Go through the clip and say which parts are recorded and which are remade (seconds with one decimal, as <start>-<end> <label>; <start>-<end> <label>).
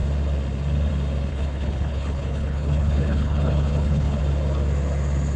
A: 0.0-1.3 recorded; 1.3-4.2 remade; 4.2-5.4 recorded